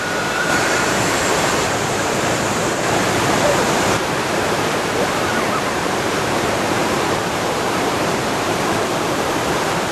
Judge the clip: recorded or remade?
remade